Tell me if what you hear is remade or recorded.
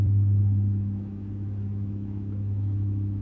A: remade